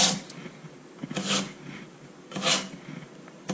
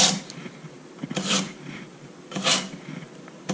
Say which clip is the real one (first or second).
first